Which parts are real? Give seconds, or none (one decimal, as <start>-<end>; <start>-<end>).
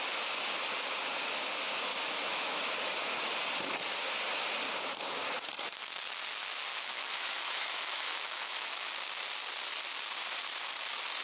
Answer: 0.0-1.9; 2.6-6.7; 8.9-11.2